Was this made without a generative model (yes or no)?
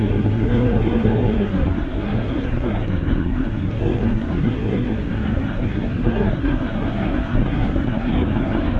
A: no